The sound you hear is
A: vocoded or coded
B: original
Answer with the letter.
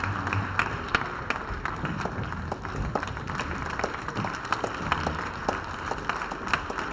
B